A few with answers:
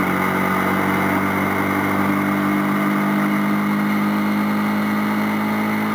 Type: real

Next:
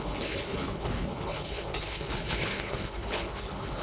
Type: fake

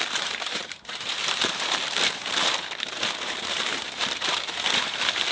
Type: fake